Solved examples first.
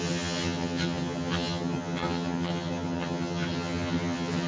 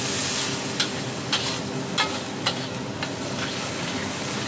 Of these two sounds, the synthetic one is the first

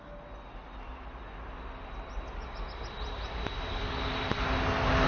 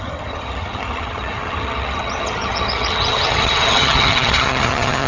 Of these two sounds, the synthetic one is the second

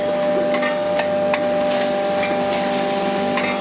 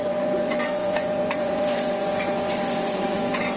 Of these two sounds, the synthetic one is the second